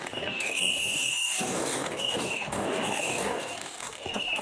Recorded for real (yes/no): no